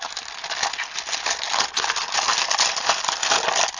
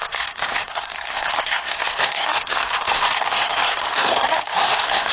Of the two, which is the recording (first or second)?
first